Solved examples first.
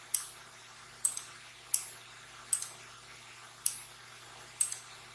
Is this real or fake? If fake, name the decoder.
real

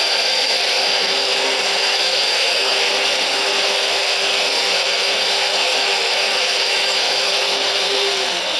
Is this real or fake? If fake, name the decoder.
fake, codec, SNAC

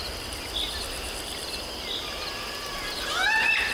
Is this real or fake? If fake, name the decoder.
real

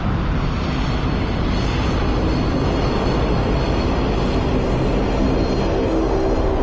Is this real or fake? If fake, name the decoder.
real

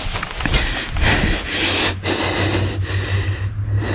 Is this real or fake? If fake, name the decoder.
real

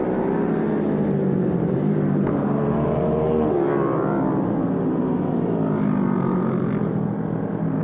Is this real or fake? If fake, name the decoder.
real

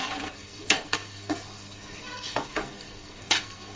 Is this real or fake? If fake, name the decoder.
fake, codec, SNAC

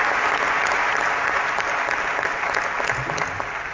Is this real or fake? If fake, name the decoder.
real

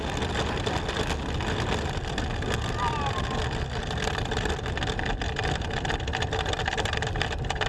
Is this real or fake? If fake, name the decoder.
real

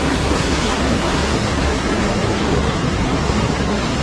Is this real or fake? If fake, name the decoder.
fake, codec, SNAC